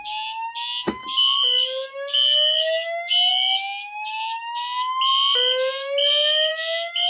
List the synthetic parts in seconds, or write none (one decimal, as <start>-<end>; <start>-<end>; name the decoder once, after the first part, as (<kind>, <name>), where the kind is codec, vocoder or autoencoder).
none